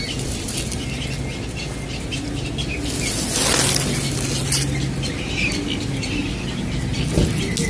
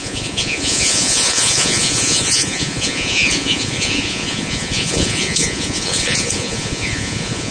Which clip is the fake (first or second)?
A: second